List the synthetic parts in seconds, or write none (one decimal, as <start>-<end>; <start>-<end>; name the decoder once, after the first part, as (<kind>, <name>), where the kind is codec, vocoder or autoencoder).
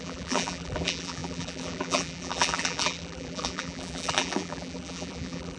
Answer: 0.0-5.6 (vocoder, BigVGAN v2)